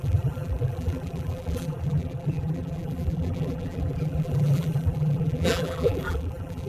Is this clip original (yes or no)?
no